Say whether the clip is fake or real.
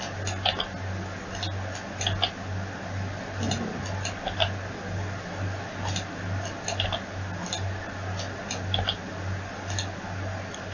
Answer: real